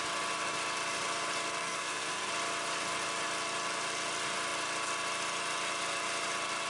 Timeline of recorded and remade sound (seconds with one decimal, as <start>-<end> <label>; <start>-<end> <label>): 0.0-1.6 recorded; 1.6-2.3 remade; 2.3-6.7 recorded